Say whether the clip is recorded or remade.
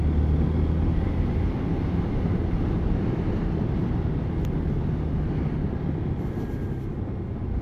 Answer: recorded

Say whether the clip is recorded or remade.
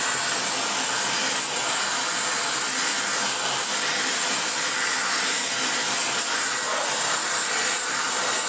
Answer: recorded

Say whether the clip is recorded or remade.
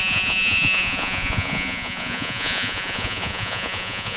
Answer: remade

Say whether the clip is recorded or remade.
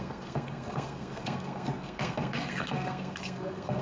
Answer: remade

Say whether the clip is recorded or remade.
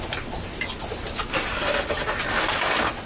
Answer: recorded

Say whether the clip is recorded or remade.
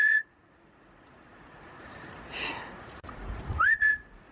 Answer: remade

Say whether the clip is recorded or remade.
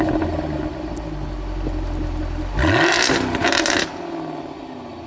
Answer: recorded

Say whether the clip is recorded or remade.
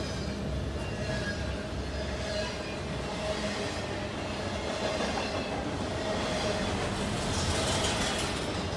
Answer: recorded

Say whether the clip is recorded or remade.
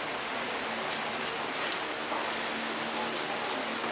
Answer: recorded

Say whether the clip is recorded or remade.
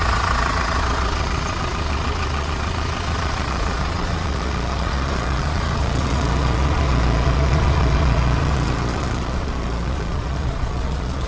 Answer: remade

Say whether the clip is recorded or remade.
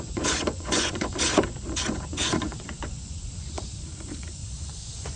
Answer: remade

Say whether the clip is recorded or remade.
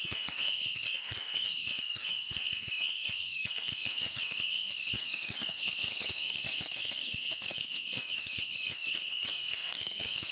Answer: remade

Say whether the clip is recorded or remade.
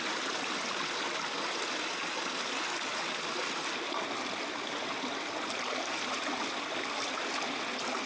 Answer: recorded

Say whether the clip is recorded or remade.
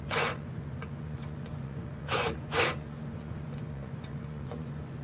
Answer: remade